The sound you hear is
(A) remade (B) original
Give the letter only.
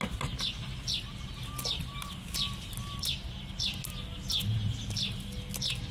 B